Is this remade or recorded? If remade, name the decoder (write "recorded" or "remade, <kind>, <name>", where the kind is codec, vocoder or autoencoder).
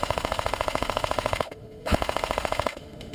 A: remade, autoencoder, DAC-VAE